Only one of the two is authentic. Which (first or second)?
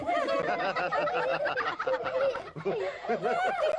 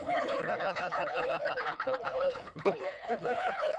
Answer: first